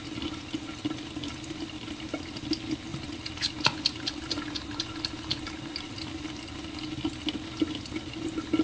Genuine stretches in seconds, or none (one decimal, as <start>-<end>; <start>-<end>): 0.0-8.6